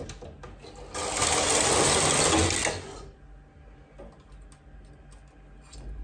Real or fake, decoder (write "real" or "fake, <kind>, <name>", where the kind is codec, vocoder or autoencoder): real